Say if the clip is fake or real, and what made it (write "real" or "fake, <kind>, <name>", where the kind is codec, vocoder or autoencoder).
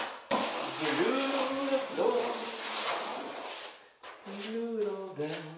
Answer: real